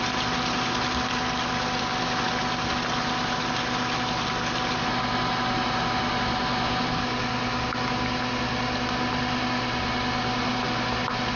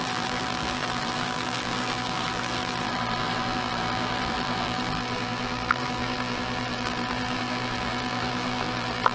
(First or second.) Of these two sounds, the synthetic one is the second